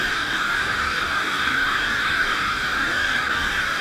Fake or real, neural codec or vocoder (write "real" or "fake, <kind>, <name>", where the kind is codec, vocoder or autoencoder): fake, codec, DAC